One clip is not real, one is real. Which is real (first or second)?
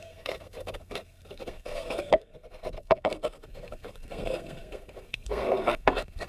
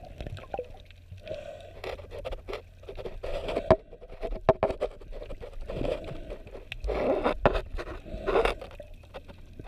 second